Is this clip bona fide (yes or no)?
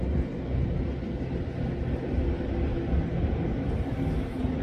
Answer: yes